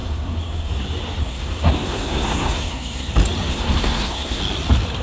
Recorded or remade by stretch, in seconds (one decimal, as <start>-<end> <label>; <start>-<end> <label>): 0.0-0.7 remade; 0.7-1.2 recorded; 1.2-3.1 remade; 3.1-3.5 recorded; 3.5-4.4 remade; 4.4-5.0 recorded